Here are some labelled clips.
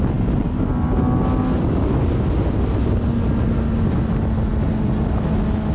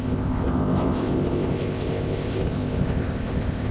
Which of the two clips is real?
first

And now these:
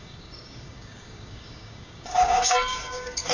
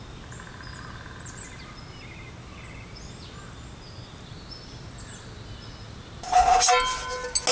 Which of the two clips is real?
second